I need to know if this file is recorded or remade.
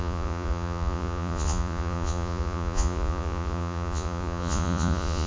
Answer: remade